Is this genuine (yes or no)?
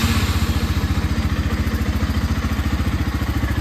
yes